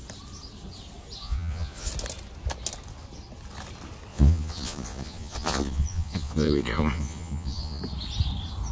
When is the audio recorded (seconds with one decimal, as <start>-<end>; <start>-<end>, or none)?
0.0-1.2; 1.9-4.1; 7.8-8.7